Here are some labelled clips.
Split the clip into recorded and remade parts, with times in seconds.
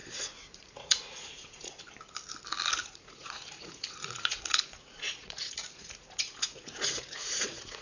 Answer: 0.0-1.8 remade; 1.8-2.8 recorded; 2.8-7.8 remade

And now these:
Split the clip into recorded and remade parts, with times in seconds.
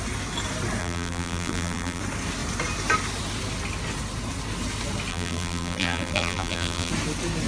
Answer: 0.0-0.8 recorded; 0.8-2.0 remade; 2.0-5.1 recorded; 5.1-6.9 remade; 6.9-7.5 recorded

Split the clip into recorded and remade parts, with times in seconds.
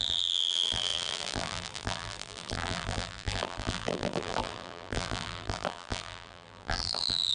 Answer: 0.0-7.3 remade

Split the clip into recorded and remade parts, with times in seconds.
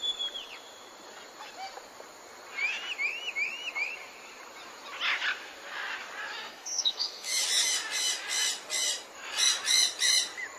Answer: 0.0-6.4 recorded; 6.4-7.3 remade; 7.3-10.6 recorded